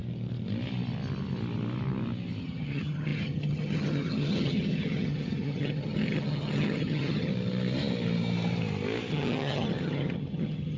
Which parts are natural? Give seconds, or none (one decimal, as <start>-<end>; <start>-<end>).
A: 0.0-2.4; 7.3-9.1